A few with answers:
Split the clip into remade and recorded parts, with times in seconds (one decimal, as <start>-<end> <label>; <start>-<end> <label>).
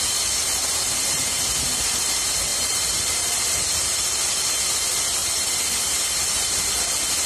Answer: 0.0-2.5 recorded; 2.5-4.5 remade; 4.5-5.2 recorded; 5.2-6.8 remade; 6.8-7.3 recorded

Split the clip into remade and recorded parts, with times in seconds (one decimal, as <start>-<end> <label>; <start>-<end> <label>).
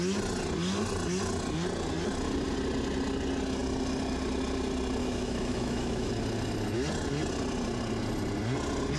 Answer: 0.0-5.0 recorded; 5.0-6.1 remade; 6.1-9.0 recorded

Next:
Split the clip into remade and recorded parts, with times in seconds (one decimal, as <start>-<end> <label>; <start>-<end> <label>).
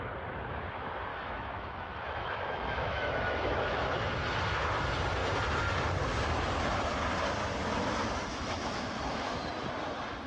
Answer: 0.0-1.1 recorded; 1.1-4.0 remade; 4.0-8.3 recorded; 8.3-9.4 remade; 9.4-10.3 recorded